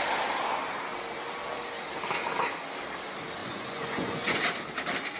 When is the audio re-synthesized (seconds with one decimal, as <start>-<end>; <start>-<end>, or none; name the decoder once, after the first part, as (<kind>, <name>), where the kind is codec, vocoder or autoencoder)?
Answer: 3.4-4.4 (vocoder, Vocos)